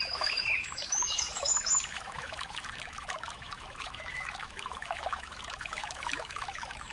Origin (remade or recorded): remade